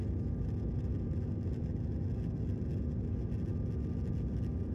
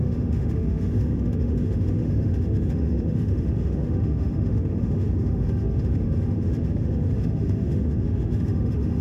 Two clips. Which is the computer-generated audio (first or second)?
second